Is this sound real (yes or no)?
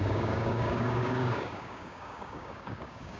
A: no